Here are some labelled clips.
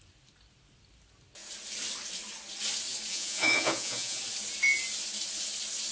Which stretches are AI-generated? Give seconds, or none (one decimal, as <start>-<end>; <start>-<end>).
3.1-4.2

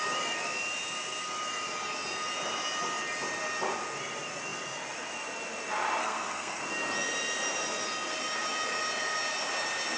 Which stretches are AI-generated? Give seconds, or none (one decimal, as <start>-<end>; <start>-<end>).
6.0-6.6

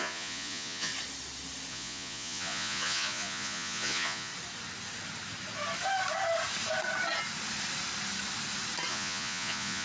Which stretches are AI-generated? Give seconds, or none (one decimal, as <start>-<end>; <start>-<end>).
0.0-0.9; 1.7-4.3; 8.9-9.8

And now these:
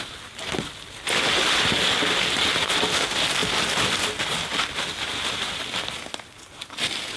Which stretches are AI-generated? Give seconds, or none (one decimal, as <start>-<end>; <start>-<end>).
none